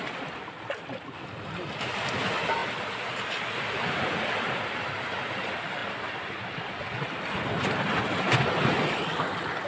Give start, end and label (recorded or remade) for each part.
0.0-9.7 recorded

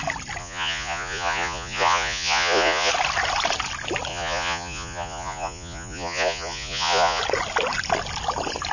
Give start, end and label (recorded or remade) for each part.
0.0-0.4 recorded; 0.4-2.9 remade; 2.9-4.1 recorded; 4.1-7.2 remade; 7.2-8.7 recorded

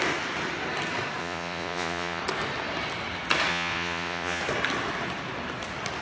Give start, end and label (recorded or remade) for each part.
0.0-1.2 recorded; 1.2-2.2 remade; 2.2-3.5 recorded; 3.5-4.4 remade; 4.4-6.0 recorded

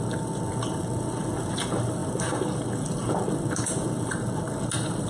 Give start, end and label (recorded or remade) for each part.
0.0-5.1 recorded

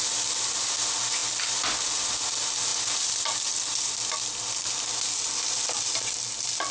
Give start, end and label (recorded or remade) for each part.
0.0-6.7 recorded

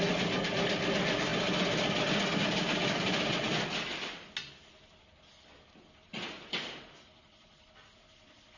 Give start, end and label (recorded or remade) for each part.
0.0-8.6 recorded

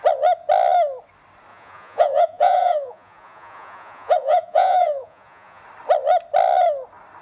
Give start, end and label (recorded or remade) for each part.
0.0-1.5 recorded; 1.5-5.6 remade; 5.6-7.2 recorded

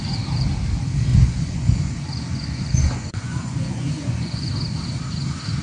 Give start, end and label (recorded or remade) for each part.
0.0-1.1 recorded; 1.1-4.5 remade; 4.5-5.6 recorded